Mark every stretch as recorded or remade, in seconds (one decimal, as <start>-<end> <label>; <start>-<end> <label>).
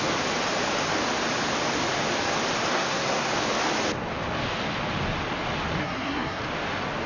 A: 0.0-2.7 recorded; 2.7-3.3 remade; 3.3-5.8 recorded; 5.8-6.4 remade; 6.4-7.1 recorded